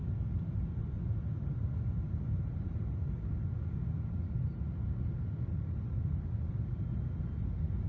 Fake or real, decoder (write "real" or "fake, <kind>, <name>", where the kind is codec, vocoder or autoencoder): real